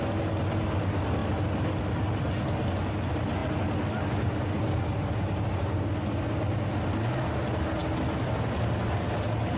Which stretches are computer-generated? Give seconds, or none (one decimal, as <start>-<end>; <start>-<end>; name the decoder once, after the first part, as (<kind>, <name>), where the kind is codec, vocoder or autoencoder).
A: none